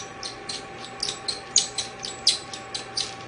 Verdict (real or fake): real